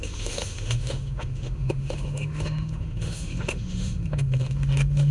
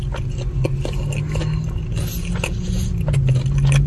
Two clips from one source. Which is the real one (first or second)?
second